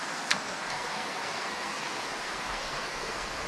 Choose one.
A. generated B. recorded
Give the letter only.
A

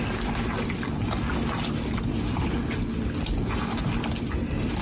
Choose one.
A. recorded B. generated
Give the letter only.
A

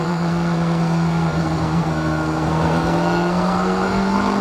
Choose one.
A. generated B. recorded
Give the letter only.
A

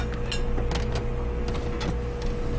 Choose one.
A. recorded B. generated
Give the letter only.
A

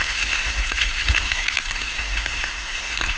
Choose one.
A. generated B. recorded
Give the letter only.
A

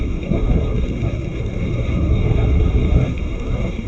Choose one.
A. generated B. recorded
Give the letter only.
A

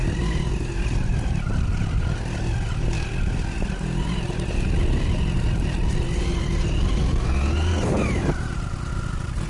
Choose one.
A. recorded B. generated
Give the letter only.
A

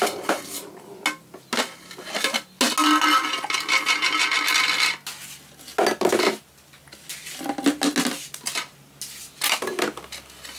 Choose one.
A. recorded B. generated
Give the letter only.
A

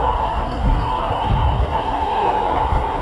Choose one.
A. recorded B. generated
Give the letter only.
B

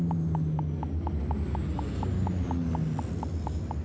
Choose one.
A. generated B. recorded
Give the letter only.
B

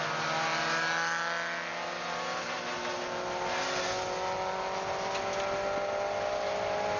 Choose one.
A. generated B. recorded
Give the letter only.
B